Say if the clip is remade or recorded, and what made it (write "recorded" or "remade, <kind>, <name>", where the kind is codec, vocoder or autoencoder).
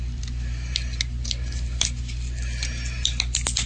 recorded